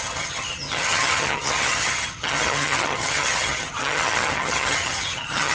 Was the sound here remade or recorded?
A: remade